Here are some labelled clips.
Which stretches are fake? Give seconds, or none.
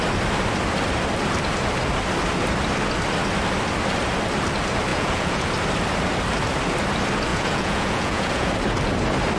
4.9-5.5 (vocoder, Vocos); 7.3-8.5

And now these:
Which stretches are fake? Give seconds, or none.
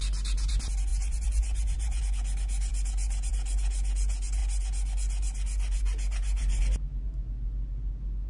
0.9-2.0 (vocoder, Vocos)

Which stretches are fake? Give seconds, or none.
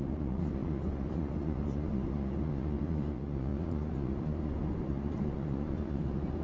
0.0-6.4 (vocoder, Vocos)